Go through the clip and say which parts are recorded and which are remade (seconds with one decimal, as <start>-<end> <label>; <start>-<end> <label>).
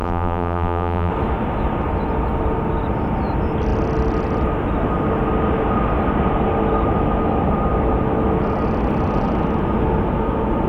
0.0-1.1 remade; 1.1-10.7 recorded